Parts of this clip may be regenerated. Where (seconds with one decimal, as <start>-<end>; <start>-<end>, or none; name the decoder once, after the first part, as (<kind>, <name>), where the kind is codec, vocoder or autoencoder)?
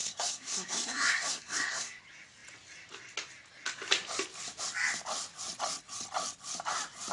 0.0-2.0 (codec, SNAC)